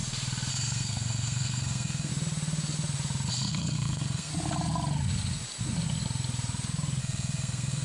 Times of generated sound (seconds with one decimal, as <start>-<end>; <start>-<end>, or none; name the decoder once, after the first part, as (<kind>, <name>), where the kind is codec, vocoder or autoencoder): 0.5-2.1 (codec, SNAC); 3.3-4.3; 7.0-7.8